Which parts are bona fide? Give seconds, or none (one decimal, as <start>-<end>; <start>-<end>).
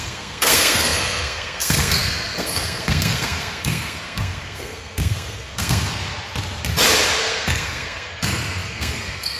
6.0-7.2